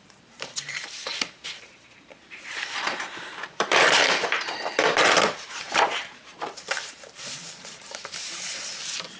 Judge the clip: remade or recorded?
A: remade